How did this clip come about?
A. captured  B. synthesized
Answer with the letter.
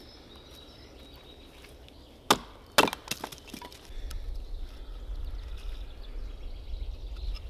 A